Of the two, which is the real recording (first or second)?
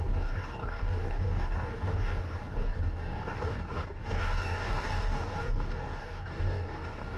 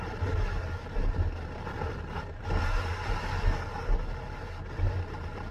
second